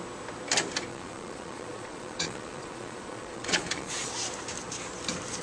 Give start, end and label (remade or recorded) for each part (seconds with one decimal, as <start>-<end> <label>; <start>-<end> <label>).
0.0-0.9 recorded; 0.9-4.1 remade; 4.1-5.4 recorded